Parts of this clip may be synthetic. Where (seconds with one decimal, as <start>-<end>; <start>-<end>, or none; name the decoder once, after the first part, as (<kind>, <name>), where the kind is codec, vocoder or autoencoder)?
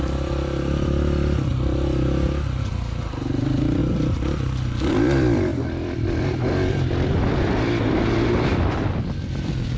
0.0-1.5 (vocoder, BigVGAN v2); 2.6-3.8; 4.9-9.8